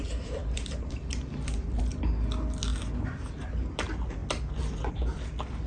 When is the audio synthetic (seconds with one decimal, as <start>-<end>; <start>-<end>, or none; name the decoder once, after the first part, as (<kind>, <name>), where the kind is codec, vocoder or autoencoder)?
0.4-1.8 (vocoder, BigVGAN v2)